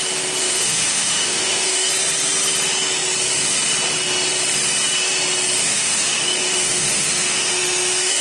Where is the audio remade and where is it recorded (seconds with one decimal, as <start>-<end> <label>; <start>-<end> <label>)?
0.0-0.4 recorded; 0.4-1.9 remade; 1.9-5.6 recorded; 5.6-8.2 remade